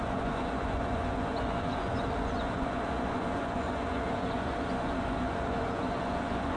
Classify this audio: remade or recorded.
remade